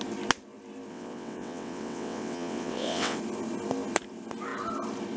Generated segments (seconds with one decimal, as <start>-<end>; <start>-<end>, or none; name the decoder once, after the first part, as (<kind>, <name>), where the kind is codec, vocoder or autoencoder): 0.9-3.2 (vocoder, WaveNeXt)